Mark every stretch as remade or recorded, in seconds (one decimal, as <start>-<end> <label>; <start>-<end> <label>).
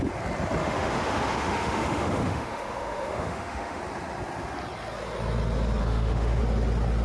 0.0-0.6 recorded; 0.6-3.8 remade; 3.8-5.8 recorded; 5.8-6.4 remade; 6.4-7.0 recorded